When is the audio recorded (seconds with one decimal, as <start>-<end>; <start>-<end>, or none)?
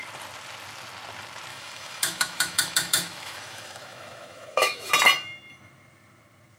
0.0-1.5; 4.9-6.6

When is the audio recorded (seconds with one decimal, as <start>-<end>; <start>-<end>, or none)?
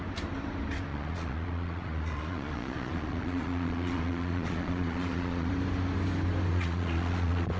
0.0-0.9; 5.5-6.5